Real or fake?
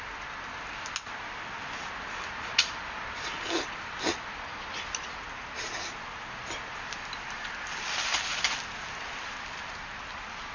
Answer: real